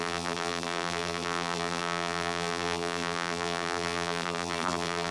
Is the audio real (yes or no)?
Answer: no